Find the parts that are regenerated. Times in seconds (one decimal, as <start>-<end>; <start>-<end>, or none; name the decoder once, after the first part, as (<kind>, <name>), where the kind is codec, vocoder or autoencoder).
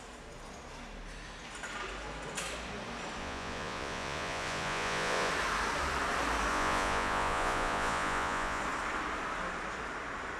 3.2-5.3 (vocoder, Vocos); 6.5-8.6